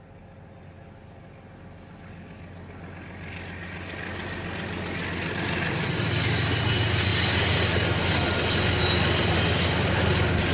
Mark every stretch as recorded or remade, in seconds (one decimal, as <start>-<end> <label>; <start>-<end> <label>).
0.0-10.5 recorded